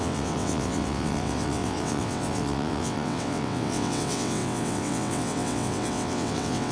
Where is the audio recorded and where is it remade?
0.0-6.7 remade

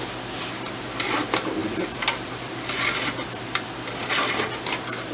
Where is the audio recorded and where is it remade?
0.0-1.6 recorded; 1.6-4.3 remade; 4.3-5.1 recorded

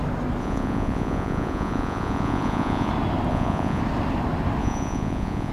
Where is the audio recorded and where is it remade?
0.0-0.4 recorded; 0.4-2.9 remade; 2.9-3.3 recorded; 3.3-3.8 remade; 3.8-4.6 recorded; 4.6-5.5 remade